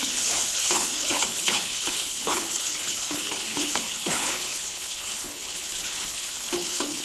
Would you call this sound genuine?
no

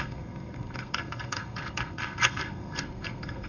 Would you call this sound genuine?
no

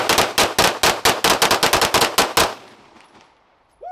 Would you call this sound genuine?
yes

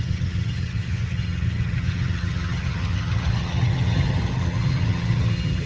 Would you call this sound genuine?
no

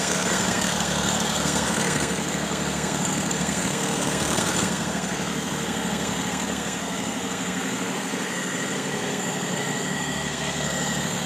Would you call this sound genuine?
no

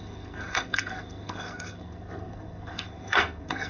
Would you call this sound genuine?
no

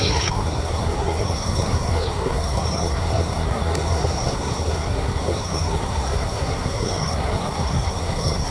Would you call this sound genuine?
no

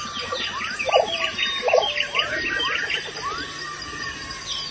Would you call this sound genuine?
yes